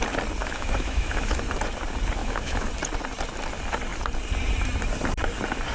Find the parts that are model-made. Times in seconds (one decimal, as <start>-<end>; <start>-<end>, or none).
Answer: 0.4-1.4; 2.2-2.7